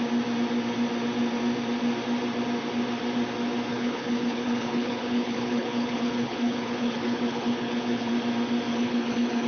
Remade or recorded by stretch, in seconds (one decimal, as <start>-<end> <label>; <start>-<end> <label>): 0.0-3.7 recorded; 3.7-8.1 remade; 8.1-8.7 recorded; 8.7-9.5 remade

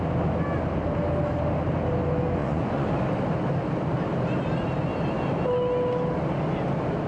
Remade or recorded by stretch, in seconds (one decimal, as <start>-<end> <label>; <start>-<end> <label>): 0.0-2.4 recorded; 2.4-2.9 remade; 2.9-7.1 recorded

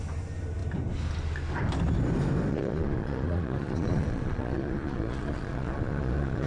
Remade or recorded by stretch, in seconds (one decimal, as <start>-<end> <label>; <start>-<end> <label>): 0.0-2.5 recorded; 2.5-6.5 remade

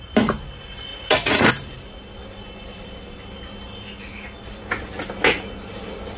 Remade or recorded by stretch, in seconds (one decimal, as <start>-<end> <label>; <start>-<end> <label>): 0.0-0.9 recorded; 0.9-1.5 remade; 1.5-6.2 recorded

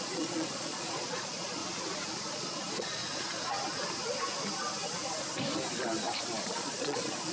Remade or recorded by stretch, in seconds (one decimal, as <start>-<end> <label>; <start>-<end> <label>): 0.0-1.6 remade; 1.6-2.3 recorded; 2.3-3.0 remade; 3.0-6.4 recorded; 6.4-7.3 remade

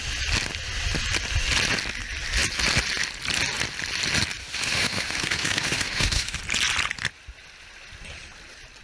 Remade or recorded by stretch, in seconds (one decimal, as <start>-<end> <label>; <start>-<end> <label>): 0.0-4.4 recorded; 4.4-6.4 remade; 6.4-8.8 recorded

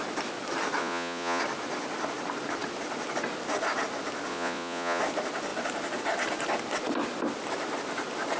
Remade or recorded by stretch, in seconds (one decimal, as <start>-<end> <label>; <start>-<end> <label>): 0.0-0.8 recorded; 0.8-1.4 remade; 1.4-4.3 recorded; 4.3-5.0 remade; 5.0-8.4 recorded